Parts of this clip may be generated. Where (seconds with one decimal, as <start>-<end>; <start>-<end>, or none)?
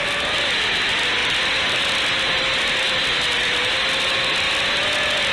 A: none